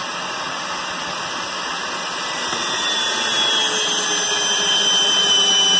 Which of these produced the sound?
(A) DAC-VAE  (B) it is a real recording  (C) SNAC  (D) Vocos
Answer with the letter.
B